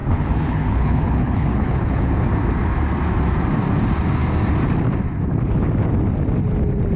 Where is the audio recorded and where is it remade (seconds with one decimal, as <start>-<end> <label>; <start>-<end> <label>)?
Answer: 0.0-2.1 remade; 2.1-7.0 recorded